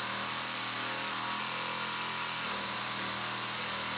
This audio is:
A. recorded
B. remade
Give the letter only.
A